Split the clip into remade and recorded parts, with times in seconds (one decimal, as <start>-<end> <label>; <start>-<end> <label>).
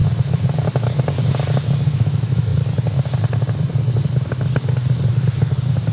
0.0-1.9 recorded; 1.9-2.5 remade; 2.5-5.9 recorded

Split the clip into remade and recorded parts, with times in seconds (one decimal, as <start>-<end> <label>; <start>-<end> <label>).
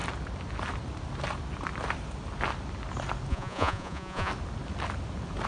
0.0-3.3 recorded; 3.3-4.3 remade; 4.3-5.5 recorded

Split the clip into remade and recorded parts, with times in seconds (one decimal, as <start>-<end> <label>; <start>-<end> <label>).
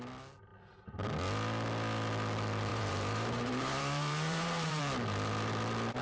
0.0-2.7 recorded; 2.7-4.8 remade; 4.8-6.0 recorded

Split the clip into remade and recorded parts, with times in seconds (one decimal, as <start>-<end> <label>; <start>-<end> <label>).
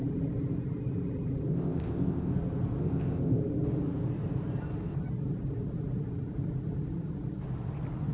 0.0-1.5 recorded; 1.5-2.3 remade; 2.3-2.8 recorded; 2.8-3.4 remade; 3.4-8.1 recorded